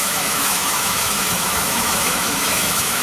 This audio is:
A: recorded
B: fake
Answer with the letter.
B